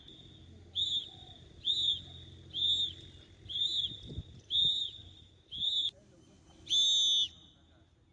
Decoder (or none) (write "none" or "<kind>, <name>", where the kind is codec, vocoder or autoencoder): none